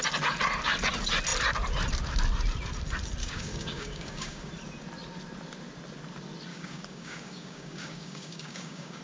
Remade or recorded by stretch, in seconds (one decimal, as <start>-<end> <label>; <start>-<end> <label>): 0.0-3.2 recorded; 3.2-4.5 remade; 4.5-6.5 recorded; 6.5-9.0 remade